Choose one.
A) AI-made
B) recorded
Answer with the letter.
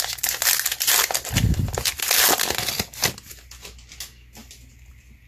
B